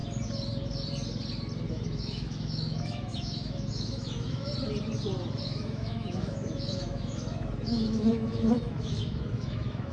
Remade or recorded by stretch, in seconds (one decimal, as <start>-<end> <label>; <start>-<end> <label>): 0.0-1.7 recorded; 1.7-4.5 remade; 4.5-5.4 recorded; 5.4-9.9 remade